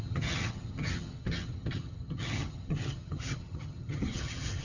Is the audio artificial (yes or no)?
yes